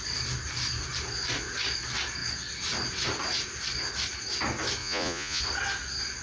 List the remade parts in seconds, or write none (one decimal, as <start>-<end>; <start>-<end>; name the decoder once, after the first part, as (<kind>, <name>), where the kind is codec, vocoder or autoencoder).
4.8-5.4 (vocoder, Vocos)